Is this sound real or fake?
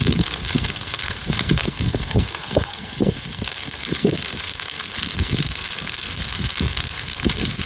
fake